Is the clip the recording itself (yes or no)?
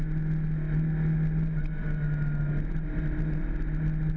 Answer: yes